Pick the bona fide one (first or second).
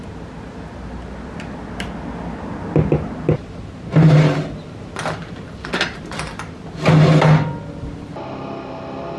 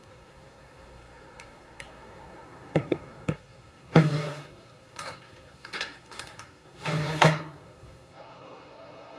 first